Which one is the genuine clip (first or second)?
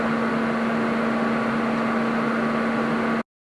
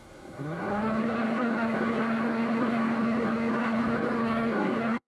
first